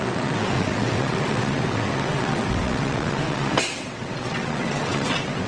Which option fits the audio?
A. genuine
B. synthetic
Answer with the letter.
B